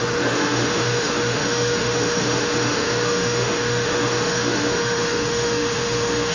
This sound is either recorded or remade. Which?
remade